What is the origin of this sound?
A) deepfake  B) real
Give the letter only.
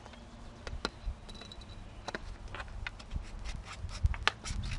B